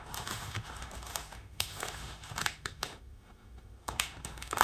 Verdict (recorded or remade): remade